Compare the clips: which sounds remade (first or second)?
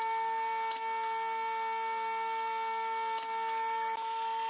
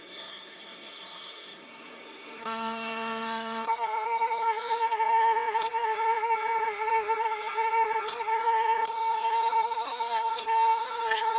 second